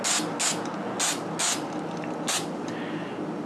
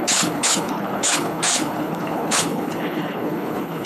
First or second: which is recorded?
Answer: first